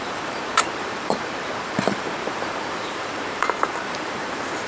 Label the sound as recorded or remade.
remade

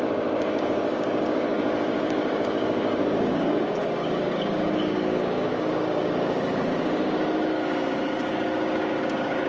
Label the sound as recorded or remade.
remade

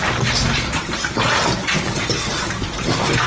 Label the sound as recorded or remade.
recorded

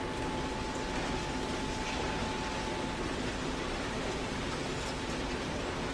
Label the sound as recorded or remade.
recorded